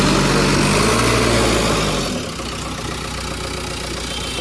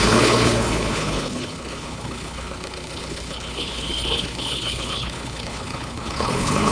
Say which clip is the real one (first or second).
first